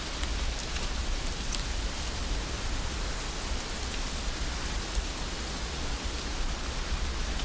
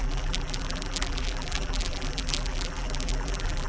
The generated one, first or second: second